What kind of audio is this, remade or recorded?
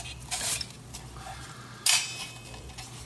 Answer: recorded